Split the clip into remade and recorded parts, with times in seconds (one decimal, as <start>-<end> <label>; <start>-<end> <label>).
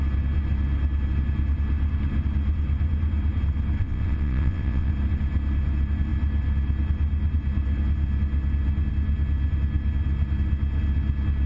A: 0.0-3.8 recorded; 3.8-4.9 remade; 4.9-11.5 recorded